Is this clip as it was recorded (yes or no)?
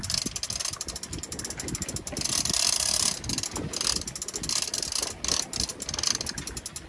yes